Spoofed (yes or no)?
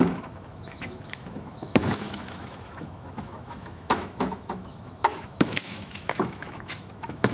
yes